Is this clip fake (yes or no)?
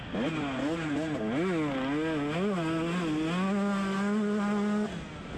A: no